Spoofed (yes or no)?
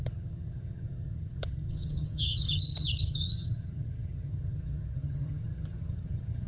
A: yes